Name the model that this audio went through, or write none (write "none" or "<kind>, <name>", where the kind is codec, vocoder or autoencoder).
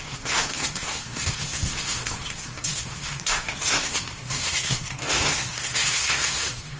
codec, SNAC